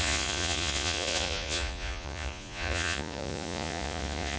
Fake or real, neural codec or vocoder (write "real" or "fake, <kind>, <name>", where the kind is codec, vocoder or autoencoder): fake, vocoder, Vocos